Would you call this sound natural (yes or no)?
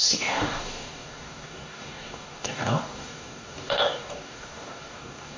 no